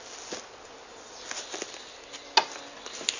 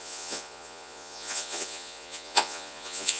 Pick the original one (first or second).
first